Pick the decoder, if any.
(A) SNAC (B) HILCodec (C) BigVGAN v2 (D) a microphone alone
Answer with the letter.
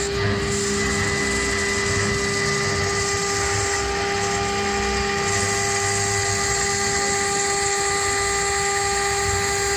D